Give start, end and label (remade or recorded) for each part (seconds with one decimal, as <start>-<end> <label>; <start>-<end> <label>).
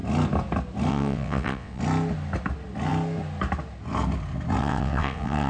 0.0-0.9 recorded; 0.9-1.8 remade; 1.8-4.6 recorded; 4.6-5.5 remade